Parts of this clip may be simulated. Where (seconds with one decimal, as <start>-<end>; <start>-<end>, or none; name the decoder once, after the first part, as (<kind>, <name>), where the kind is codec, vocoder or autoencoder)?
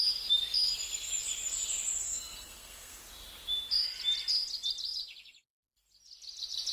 2.0-3.0 (codec, SNAC)